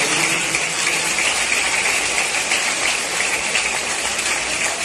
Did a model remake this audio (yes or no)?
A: yes